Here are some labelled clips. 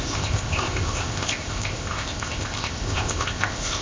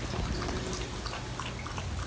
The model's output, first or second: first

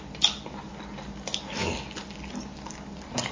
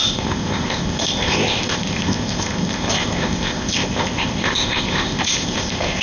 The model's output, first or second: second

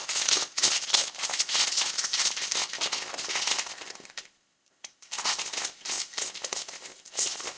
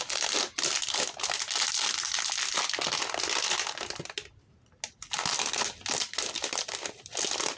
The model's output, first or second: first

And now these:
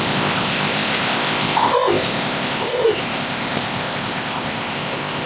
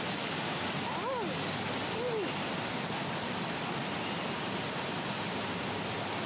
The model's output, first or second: first